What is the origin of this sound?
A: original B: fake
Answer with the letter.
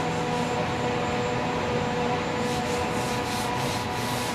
A